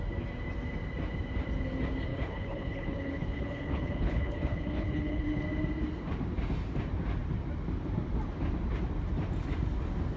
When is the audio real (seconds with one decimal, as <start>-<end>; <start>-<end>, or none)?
0.0-2.1; 5.4-10.2